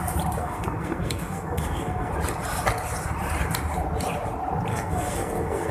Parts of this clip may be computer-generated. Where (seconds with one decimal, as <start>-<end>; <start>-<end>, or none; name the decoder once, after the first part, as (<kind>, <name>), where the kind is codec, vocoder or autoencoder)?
0.4-2.1 (codec, SNAC); 4.7-5.7